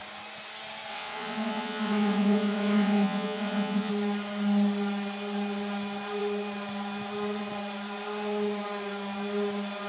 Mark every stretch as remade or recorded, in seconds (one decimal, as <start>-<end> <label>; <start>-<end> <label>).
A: 0.0-0.9 recorded; 0.9-3.9 remade; 3.9-9.9 recorded